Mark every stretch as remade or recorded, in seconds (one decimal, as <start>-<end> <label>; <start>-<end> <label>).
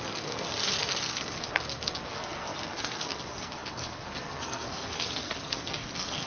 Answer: 0.0-6.3 remade